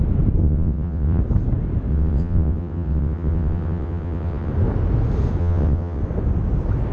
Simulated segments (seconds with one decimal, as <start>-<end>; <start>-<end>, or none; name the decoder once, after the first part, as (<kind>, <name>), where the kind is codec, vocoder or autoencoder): 0.4-1.2 (vocoder, WaveNeXt); 1.9-4.5; 5.4-6.0

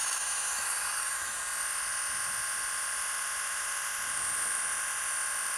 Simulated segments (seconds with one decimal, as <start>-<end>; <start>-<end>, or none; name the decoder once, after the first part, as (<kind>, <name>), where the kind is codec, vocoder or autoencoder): 0.0-1.4 (autoencoder, DAC-VAE)

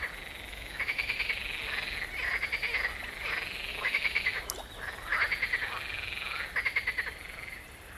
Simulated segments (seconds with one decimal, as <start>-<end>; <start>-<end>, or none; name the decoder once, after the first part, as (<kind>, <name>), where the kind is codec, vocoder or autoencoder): 0.5-1.3 (autoencoder, DAC-VAE); 3.7-4.4

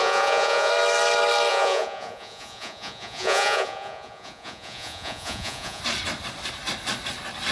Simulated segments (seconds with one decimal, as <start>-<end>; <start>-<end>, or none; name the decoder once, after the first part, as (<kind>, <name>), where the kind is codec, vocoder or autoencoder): 0.0-0.7 (vocoder, Vocos); 1.5-5.8

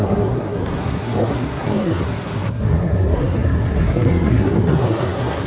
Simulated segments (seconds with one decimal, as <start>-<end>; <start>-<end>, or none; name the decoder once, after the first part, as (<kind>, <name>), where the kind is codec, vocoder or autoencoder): 0.0-5.5 (codec, SNAC)

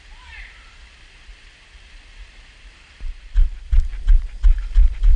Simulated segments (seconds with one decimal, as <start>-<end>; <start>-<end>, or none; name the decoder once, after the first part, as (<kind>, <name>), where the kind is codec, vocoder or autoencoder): none

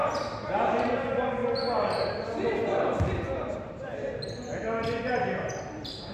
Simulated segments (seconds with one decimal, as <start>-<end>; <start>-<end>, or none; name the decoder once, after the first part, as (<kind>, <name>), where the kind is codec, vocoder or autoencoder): 0.0-0.9 (vocoder, BigVGAN v2)

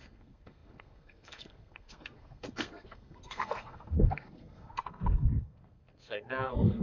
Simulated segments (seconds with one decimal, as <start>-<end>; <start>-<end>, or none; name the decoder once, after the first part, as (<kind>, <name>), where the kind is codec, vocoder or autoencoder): 0.0-6.8 (codec, SNAC)